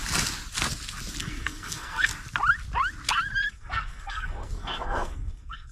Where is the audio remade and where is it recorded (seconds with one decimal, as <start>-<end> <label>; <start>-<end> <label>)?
0.0-1.2 recorded; 1.2-2.1 remade; 2.1-3.5 recorded; 3.5-5.7 remade